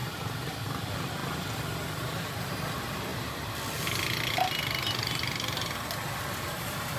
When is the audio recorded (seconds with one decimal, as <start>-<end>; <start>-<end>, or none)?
1.2-2.0; 3.1-6.5